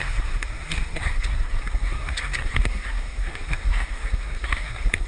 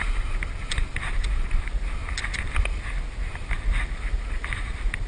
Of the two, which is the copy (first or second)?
first